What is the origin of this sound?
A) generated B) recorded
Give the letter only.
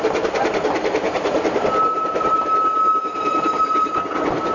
B